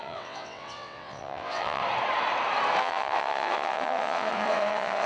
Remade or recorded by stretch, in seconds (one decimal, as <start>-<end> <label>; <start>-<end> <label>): 0.0-1.8 remade; 1.8-2.8 recorded; 2.8-5.1 remade